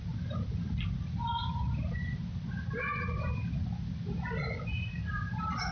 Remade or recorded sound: recorded